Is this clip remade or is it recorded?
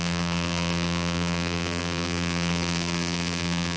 remade